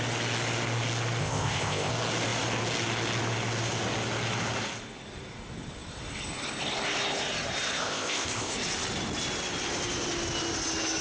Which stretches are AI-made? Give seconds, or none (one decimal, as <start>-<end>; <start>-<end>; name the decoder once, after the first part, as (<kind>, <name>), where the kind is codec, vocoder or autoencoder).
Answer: 1.2-1.9 (codec, ZipCodec); 7.8-8.5